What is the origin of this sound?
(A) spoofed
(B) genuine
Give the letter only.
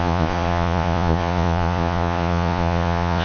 A